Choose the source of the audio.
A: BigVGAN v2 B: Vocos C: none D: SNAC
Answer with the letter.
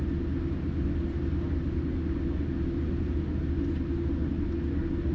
C